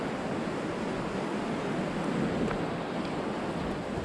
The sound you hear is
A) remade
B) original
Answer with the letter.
B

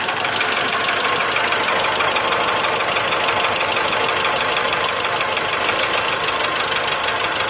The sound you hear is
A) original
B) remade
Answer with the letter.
A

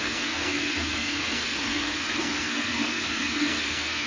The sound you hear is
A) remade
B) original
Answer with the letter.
A